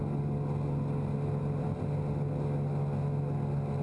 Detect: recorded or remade recorded